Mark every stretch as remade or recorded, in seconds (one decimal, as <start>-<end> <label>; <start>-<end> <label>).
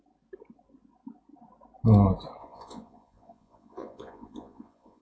0.0-2.4 recorded; 2.4-5.0 remade